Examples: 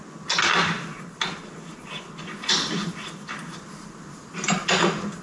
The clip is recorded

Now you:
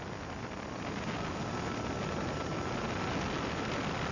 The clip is recorded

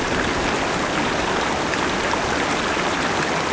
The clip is recorded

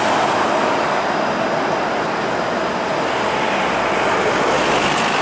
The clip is recorded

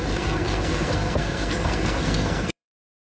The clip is remade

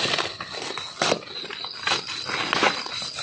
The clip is recorded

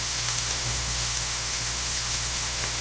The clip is remade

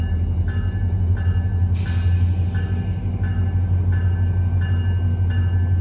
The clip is recorded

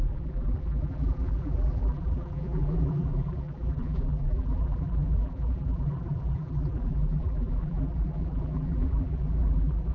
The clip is remade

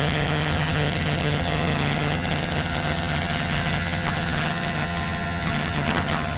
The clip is remade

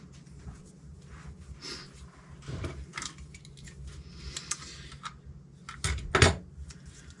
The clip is recorded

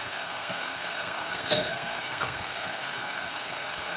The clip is remade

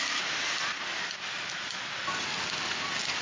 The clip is recorded